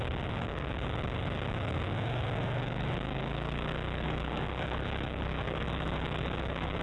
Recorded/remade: remade